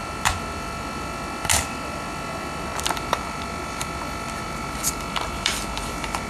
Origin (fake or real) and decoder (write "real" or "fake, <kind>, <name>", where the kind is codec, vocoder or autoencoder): fake, vocoder, BigVGAN v2